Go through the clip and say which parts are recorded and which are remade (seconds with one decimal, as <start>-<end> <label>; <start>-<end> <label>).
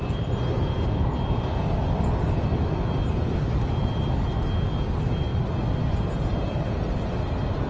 0.0-7.7 recorded